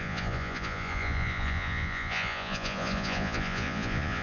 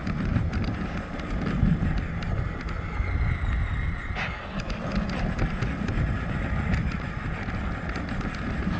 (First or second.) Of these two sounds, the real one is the second